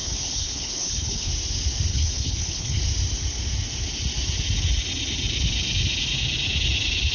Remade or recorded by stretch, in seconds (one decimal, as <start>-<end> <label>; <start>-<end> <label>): 0.0-1.3 remade; 1.3-1.9 recorded; 1.9-2.8 remade; 2.8-7.1 recorded